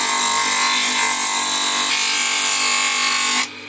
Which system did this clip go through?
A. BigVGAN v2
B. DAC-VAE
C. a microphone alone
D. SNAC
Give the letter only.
C